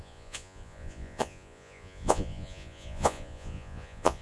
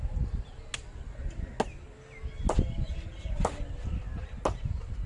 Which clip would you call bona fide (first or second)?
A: second